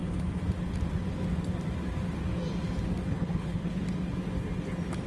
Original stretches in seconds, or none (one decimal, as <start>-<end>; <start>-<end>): 0.0-3.1; 3.8-5.1